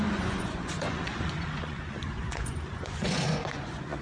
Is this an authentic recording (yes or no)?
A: no